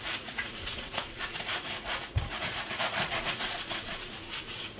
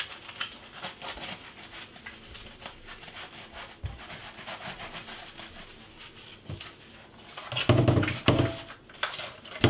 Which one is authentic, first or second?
second